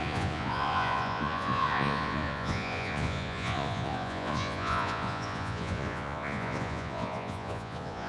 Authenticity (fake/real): fake